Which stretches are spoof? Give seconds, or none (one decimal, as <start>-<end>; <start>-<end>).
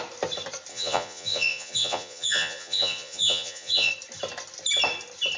0.7-3.9